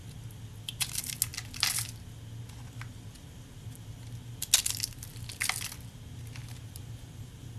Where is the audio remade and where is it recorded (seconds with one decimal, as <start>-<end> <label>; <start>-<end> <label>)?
0.0-6.4 recorded; 6.4-7.6 remade